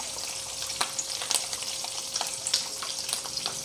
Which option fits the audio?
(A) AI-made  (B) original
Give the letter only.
B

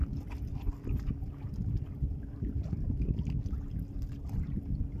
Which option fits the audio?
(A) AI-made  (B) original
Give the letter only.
B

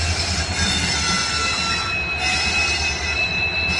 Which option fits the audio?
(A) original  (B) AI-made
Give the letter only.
A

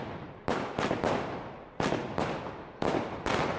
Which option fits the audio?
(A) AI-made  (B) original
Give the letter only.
B